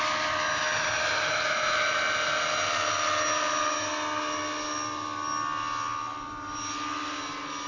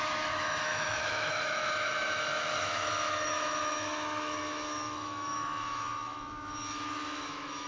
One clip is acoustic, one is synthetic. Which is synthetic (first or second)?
second